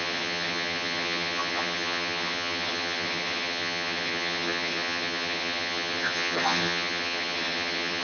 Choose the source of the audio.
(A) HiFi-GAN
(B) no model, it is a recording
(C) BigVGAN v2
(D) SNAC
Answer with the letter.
A